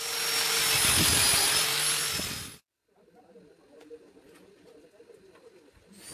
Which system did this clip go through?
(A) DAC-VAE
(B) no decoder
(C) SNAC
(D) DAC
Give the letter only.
B